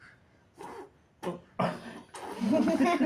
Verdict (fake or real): real